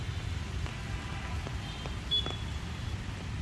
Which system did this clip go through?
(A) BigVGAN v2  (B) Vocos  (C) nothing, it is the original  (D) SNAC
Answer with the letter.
C